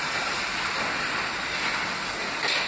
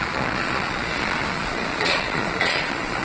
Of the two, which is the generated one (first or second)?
second